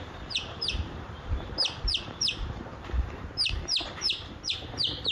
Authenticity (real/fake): fake